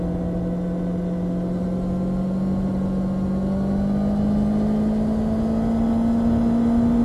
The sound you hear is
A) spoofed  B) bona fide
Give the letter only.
B